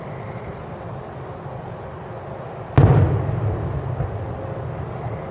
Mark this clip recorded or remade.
recorded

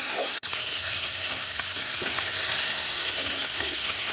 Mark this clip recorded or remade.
remade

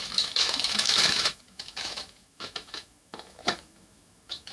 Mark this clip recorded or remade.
remade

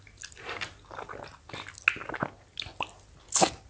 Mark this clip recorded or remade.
recorded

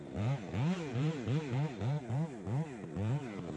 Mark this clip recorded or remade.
remade